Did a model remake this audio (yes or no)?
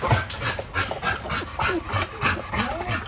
no